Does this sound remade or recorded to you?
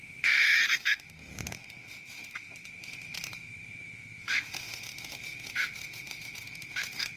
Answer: remade